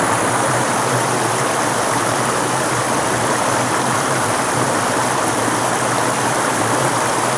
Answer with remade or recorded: recorded